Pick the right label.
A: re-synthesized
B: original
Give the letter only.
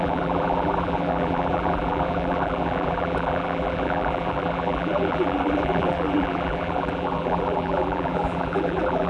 A